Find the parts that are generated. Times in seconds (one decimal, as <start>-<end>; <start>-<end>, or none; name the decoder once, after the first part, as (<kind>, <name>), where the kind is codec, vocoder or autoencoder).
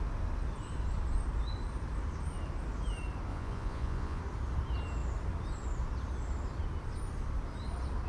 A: 3.3-4.2 (vocoder, Vocos)